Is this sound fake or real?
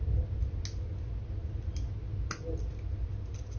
real